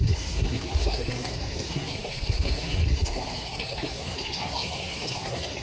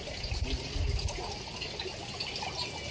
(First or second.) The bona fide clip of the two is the second